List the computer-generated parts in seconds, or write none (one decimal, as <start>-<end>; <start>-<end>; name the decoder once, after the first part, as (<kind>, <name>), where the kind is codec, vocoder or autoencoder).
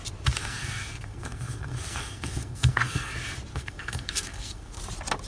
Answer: 0.4-3.1 (codec, SNAC); 3.5-4.8